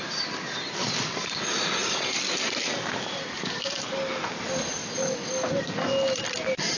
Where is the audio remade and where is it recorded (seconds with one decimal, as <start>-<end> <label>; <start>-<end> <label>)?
0.0-1.8 recorded; 1.8-3.9 remade; 3.9-6.8 recorded